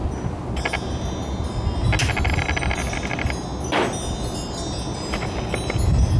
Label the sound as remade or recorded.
recorded